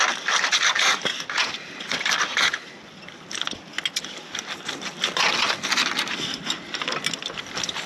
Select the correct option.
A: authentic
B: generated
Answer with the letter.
A